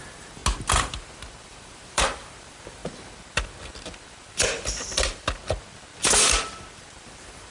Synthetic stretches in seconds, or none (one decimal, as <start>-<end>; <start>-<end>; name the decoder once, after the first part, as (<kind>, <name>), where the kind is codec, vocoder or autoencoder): 0.0-0.4 (vocoder, BigVGAN v2); 1.4-2.8; 6.7-7.5